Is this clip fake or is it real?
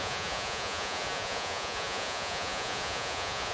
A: fake